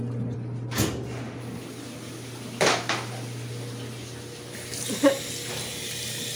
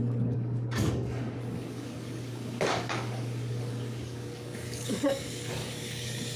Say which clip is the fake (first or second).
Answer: second